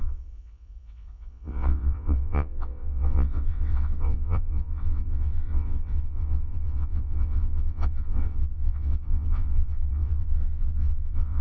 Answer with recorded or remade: remade